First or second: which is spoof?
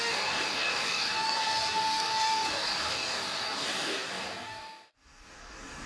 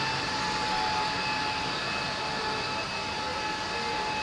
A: first